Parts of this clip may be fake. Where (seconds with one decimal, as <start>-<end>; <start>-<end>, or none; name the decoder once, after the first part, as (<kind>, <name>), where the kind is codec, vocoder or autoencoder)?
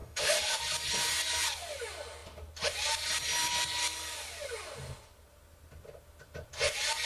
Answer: 0.0-0.6 (autoencoder, DAC-VAE)